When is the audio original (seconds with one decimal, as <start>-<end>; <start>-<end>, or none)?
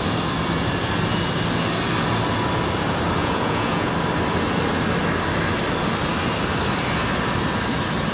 0.0-3.2; 3.9-8.1